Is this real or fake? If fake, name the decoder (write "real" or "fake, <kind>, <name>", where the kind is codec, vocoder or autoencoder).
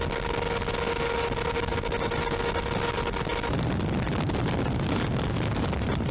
real